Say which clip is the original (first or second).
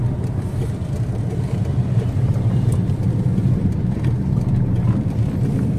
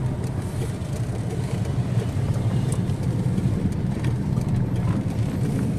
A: first